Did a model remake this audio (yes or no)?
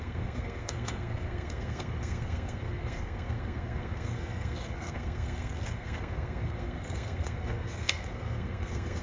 yes